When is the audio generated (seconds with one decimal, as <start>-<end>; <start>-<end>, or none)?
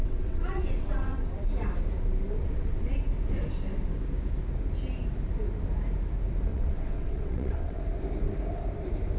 0.0-1.5; 2.4-2.9; 6.5-7.8